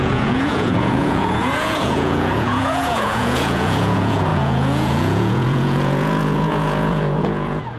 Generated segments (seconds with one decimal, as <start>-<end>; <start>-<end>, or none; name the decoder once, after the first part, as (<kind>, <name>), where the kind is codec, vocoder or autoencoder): 0.0-7.8 (vocoder, Vocos)